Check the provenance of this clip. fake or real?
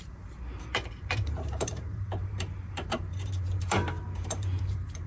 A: fake